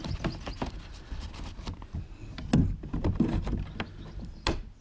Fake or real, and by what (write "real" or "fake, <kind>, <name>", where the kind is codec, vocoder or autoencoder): real